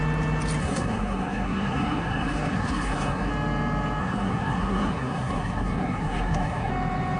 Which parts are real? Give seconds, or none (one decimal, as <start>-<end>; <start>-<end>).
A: 0.0-0.6; 3.3-4.0; 6.7-7.2